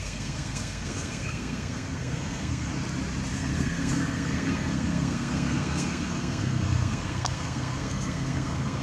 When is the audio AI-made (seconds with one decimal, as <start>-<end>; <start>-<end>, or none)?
0.0-2.7; 3.3-8.8